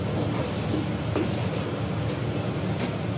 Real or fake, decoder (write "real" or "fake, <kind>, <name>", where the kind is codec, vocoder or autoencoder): real